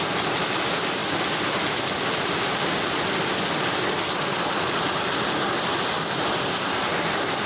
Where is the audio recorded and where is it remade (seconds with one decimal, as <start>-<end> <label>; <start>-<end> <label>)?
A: 0.0-7.5 recorded